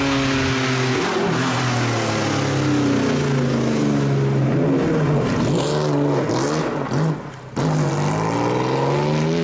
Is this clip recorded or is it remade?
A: recorded